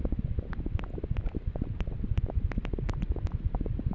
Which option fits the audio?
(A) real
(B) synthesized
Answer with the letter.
A